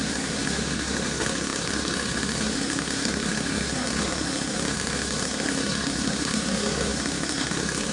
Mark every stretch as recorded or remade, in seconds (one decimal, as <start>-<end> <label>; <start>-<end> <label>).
0.0-7.9 remade

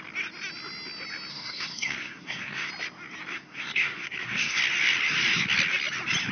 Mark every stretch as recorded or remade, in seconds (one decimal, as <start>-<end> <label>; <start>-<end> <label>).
0.0-1.3 recorded; 1.3-2.7 remade; 2.7-3.3 recorded; 3.3-4.6 remade; 4.6-6.3 recorded